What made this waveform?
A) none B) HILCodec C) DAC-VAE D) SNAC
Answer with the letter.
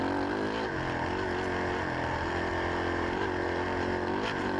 A